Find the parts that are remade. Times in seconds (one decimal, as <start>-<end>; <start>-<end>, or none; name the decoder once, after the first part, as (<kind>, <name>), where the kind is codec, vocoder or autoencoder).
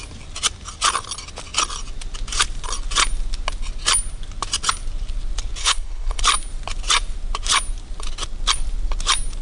5.6-6.2 (codec, HILCodec)